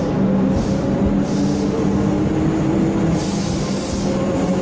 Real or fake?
real